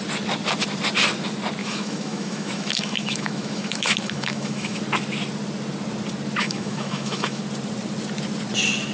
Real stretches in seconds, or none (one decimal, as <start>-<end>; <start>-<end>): 0.0-1.6; 4.8-6.4; 7.4-8.9